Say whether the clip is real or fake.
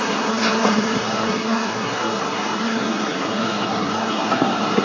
fake